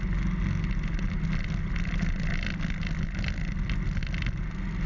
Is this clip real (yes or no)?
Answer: yes